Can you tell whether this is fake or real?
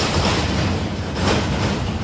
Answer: real